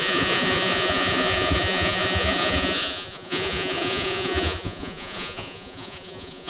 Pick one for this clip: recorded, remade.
remade